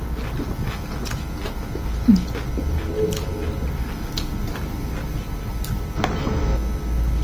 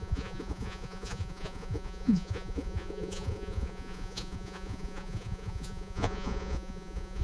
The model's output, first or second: second